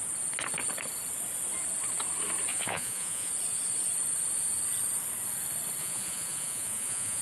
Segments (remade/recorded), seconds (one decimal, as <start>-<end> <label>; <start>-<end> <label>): 0.0-2.5 recorded; 2.5-3.3 remade; 3.3-5.8 recorded; 5.8-7.2 remade